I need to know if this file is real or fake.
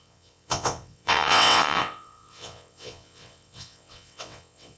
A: fake